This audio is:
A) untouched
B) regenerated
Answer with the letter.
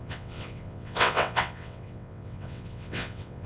B